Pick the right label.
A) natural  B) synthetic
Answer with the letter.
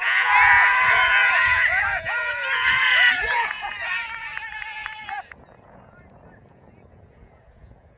B